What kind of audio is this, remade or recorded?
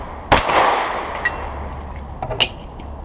recorded